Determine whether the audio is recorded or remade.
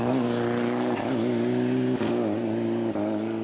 recorded